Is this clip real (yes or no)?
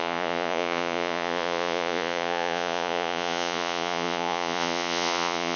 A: no